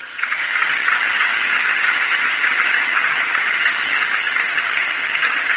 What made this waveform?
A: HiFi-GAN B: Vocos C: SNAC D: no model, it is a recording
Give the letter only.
A